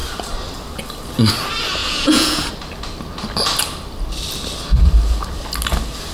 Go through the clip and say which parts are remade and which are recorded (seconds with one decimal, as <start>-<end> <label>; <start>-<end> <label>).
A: 0.0-1.8 recorded; 1.8-2.5 remade; 2.5-6.1 recorded